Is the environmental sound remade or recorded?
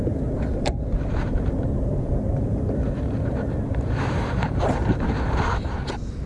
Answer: remade